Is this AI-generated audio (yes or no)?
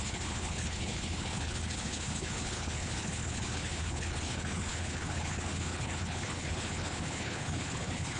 yes